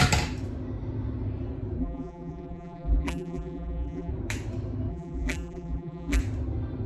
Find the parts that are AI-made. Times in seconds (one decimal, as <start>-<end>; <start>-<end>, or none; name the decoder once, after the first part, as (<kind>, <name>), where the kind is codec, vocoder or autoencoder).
1.8-4.1 (vocoder, BigVGAN v2); 4.9-6.2